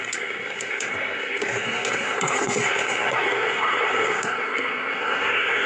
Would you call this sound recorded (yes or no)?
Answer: no